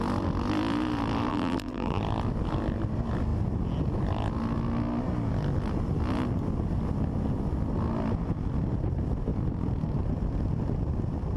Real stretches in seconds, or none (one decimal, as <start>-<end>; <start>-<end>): 0.0-1.3; 2.0-11.4